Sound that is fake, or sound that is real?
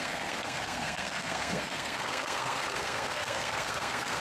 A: fake